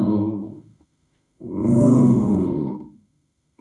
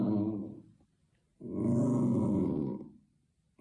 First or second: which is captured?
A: second